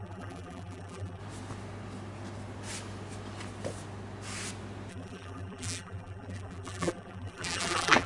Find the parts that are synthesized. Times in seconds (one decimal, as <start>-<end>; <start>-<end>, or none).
0.0-1.2; 4.9-8.1